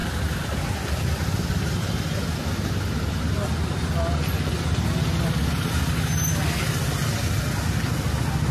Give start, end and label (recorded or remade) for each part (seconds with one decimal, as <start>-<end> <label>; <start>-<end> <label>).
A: 0.0-2.9 remade; 2.9-8.5 recorded